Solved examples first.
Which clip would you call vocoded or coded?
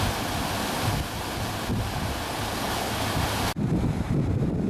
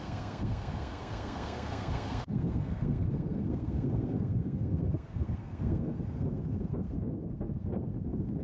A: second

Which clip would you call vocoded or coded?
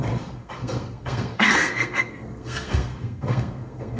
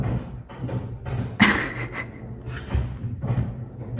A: first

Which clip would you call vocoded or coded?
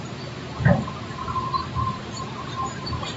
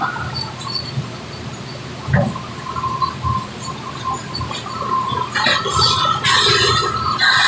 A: first